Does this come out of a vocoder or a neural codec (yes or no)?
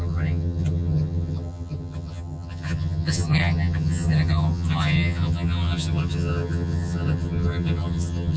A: yes